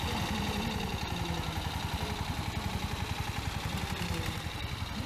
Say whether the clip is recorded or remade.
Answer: recorded